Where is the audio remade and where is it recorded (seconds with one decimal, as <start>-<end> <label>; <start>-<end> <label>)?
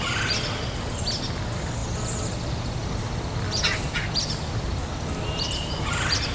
0.0-6.3 recorded